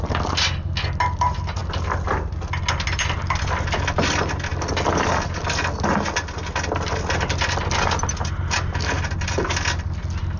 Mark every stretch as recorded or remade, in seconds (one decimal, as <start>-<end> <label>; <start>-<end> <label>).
0.0-10.4 recorded